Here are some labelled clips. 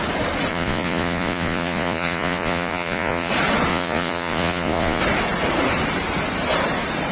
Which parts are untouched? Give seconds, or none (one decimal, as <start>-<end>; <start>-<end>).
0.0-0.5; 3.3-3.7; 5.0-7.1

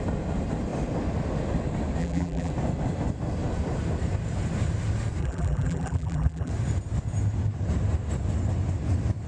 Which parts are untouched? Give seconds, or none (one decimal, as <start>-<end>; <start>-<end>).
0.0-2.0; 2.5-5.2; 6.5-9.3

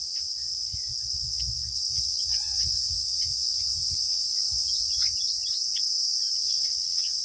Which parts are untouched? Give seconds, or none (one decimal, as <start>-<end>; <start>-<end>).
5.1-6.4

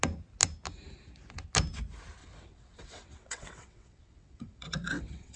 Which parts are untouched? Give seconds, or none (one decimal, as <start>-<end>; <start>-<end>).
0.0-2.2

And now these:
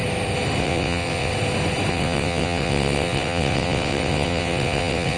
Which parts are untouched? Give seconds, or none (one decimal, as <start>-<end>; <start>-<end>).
0.0-0.6; 1.3-1.9